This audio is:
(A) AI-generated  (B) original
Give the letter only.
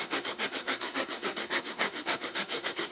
A